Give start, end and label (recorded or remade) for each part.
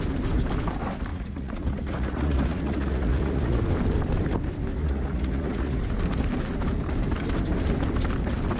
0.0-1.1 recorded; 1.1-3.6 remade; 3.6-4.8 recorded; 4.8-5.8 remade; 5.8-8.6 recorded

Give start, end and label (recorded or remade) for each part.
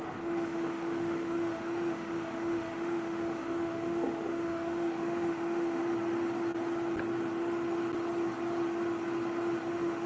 0.0-5.8 remade; 5.8-9.7 recorded; 9.7-10.1 remade